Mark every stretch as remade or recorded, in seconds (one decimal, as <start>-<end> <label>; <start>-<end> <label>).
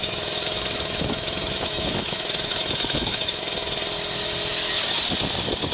0.0-3.4 remade; 3.4-5.7 recorded